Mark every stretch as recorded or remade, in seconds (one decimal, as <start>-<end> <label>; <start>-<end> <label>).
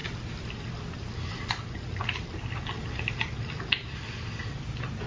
0.0-3.1 remade; 3.1-5.1 recorded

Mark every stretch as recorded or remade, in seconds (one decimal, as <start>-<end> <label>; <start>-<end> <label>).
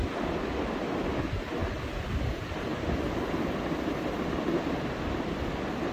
0.0-5.9 recorded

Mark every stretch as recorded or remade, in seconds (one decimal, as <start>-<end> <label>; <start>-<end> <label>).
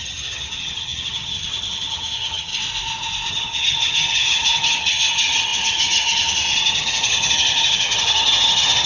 0.0-2.5 remade; 2.5-3.3 recorded; 3.3-8.9 remade